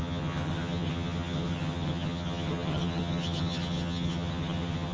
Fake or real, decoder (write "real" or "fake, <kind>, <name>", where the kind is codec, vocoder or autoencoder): fake, vocoder, HiFi-GAN